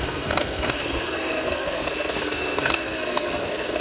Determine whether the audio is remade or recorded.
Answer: remade